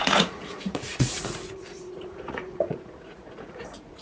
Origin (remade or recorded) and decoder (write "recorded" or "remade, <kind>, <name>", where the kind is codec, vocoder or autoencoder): remade, vocoder, Vocos